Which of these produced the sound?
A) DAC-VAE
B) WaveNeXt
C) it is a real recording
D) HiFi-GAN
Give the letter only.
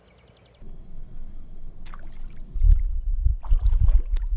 C